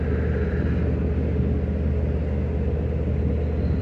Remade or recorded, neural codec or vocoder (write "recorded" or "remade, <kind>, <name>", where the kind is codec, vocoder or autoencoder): recorded